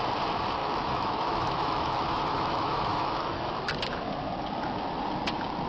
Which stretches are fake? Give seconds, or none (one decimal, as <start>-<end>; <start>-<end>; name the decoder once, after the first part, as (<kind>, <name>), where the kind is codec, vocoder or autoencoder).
0.6-3.5 (autoencoder, DAC-VAE)